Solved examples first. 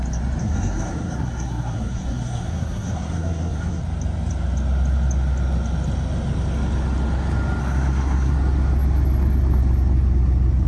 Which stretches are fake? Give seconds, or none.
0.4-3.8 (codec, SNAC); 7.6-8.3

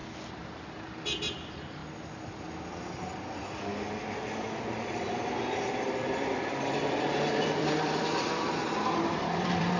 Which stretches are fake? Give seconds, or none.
0.6-1.8 (vocoder, BigVGAN v2); 4.6-9.8

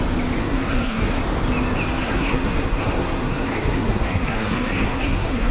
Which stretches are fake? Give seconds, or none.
0.4-1.2 (codec, SNAC); 2.0-5.5

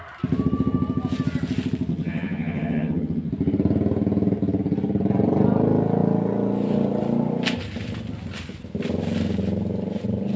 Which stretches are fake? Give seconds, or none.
1.9-3.3 (vocoder, HiFi-GAN)

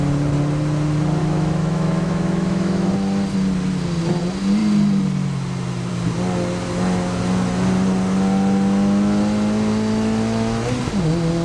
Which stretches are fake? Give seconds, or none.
1.2-2.9 (autoencoder, DAC-VAE)

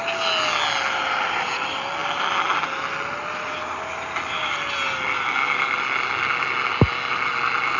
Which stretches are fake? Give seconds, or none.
none